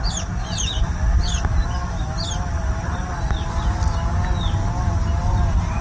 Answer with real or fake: real